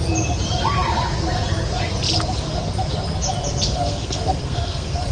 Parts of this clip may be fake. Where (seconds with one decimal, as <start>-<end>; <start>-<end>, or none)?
3.7-5.1